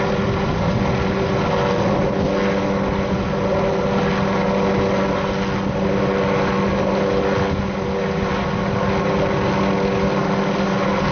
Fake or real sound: real